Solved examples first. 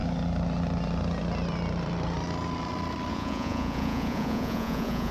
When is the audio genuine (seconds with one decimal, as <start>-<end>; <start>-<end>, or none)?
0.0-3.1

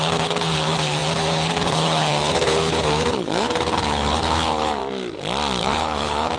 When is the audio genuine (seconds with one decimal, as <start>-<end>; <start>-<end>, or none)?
4.8-5.6

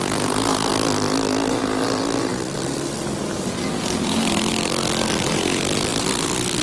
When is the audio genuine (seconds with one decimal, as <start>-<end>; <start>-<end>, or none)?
0.0-2.3; 4.5-5.9